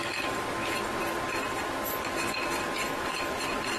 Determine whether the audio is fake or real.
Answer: real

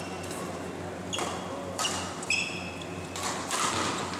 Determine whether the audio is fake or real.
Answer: real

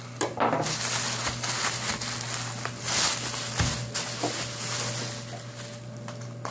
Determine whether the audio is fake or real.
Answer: real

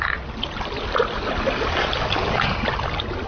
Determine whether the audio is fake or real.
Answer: real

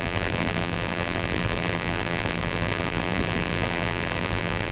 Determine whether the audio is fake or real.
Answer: fake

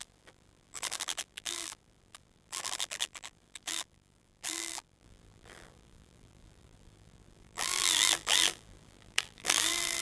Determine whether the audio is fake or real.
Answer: fake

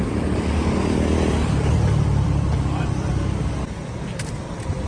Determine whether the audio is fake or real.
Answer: fake